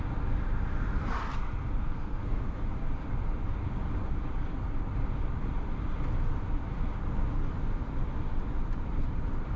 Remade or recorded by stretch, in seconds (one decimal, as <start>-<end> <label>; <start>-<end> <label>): 0.0-1.8 recorded; 1.8-2.6 remade; 2.6-9.6 recorded